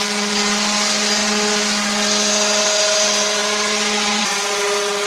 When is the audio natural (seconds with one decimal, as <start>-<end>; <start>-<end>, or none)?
0.0-5.1